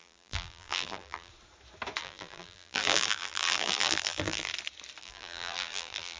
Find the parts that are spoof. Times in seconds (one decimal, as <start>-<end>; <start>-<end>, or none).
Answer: 0.0-1.3; 2.0-4.5; 5.0-6.2